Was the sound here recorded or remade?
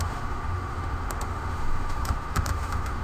remade